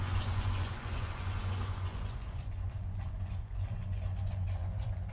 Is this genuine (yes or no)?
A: no